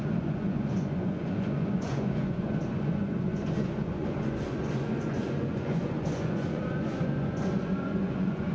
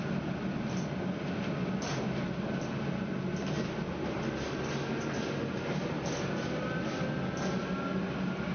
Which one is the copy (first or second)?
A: first